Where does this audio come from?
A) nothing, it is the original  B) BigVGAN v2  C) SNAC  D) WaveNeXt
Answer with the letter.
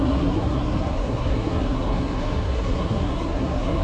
C